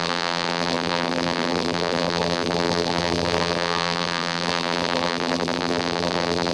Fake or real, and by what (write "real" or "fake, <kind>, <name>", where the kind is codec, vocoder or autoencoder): fake, vocoder, BigVGAN v2